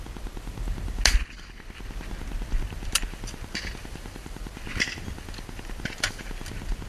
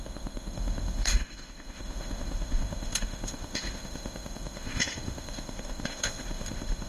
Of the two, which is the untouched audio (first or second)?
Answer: first